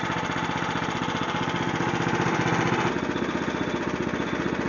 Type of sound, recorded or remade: recorded